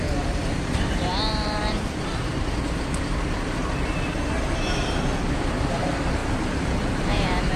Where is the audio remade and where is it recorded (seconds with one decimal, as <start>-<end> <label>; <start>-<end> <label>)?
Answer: 0.0-3.6 remade; 3.6-5.4 recorded; 5.4-6.2 remade; 6.2-7.0 recorded; 7.0-7.6 remade